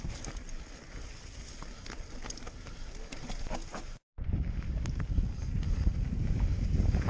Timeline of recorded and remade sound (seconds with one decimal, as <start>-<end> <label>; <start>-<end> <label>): 0.0-3.7 recorded; 3.7-4.4 remade; 4.4-7.1 recorded